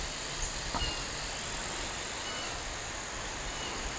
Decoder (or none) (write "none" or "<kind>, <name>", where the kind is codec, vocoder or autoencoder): none